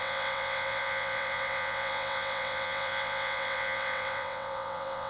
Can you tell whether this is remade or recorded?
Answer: remade